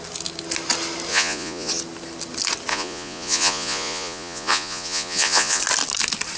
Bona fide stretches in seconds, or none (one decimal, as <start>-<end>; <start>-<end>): 0.0-1.1; 1.7-2.7; 5.6-6.4